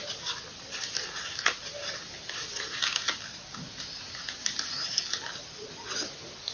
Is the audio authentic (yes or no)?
yes